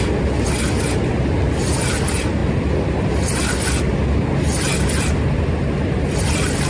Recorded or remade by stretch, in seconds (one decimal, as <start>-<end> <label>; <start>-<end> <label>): 0.0-6.7 recorded